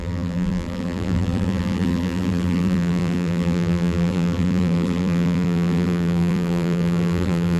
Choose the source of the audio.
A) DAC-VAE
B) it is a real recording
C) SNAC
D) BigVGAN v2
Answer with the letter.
D